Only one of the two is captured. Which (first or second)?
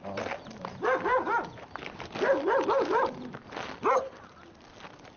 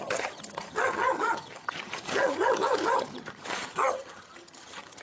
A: first